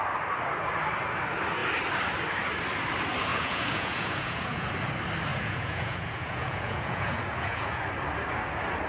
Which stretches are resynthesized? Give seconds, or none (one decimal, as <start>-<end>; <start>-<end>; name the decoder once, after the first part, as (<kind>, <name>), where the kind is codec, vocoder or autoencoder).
3.3-4.7 (vocoder, Vocos); 5.3-7.8